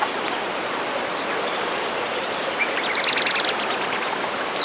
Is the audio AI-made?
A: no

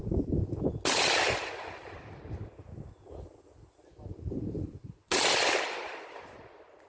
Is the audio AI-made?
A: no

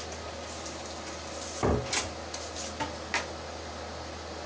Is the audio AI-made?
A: no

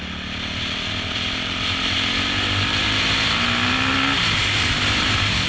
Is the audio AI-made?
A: no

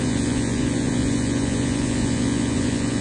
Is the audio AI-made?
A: yes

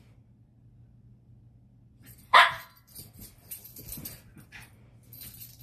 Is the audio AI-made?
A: no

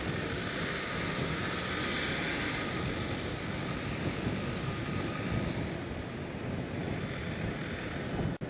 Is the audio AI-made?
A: no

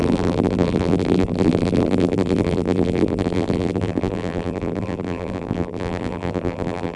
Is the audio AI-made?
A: yes